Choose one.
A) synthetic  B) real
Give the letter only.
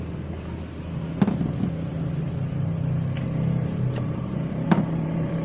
B